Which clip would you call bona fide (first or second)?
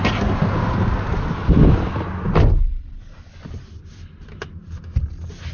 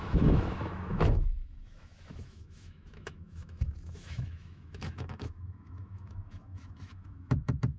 first